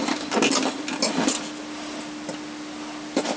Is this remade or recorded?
recorded